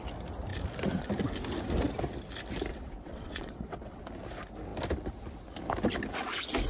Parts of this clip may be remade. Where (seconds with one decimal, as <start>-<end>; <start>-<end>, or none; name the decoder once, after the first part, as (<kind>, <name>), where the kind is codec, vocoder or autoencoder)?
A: 2.7-4.0 (vocoder, WaveNeXt)